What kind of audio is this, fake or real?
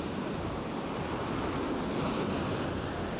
real